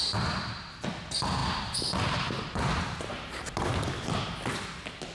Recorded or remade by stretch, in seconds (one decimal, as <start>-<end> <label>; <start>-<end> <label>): 0.0-5.1 recorded